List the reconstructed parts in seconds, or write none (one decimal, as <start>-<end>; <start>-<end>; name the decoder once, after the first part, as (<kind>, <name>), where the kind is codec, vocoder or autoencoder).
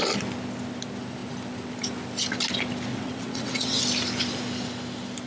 2.9-3.8 (vocoder, WaveNeXt)